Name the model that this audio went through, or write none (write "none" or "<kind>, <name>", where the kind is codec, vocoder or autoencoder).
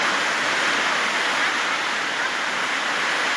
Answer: none